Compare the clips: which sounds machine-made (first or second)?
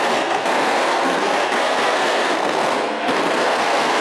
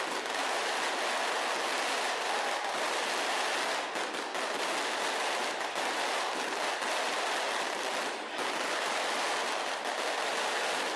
first